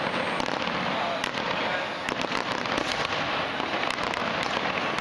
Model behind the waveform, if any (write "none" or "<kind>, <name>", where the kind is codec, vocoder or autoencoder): none